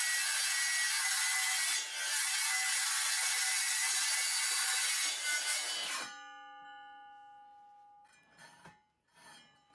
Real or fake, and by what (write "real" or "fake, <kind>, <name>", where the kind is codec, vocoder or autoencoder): real